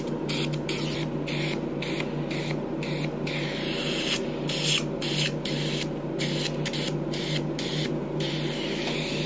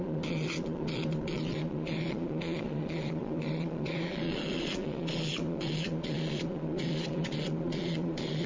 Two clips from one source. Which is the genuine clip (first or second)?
first